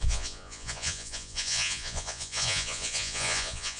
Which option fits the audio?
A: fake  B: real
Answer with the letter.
A